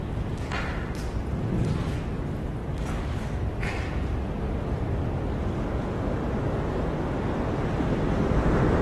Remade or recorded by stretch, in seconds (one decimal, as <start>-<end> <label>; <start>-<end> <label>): 0.0-8.8 recorded